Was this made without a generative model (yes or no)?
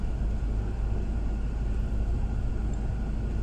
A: yes